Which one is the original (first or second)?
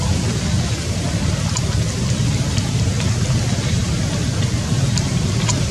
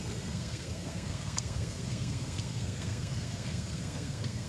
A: first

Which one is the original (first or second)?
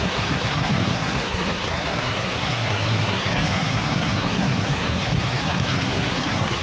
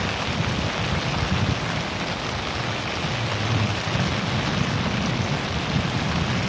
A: second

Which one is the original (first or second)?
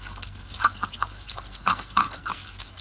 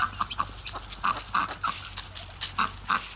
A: second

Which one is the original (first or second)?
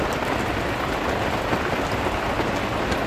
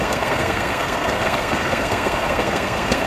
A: first